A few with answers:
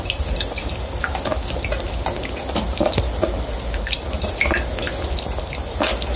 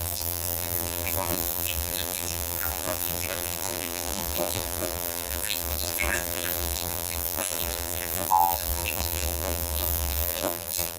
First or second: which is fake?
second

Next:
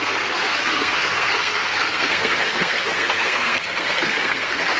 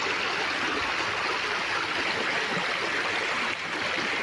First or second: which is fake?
first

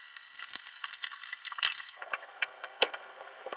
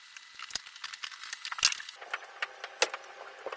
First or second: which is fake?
first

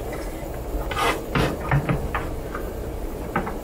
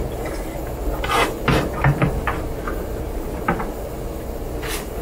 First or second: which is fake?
first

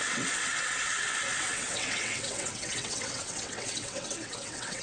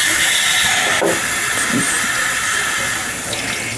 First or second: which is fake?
first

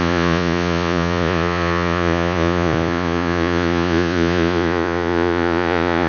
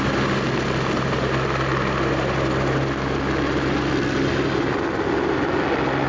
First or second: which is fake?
first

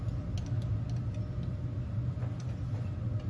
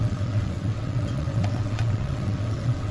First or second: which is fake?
second